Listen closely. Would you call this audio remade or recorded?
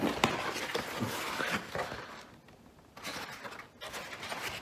recorded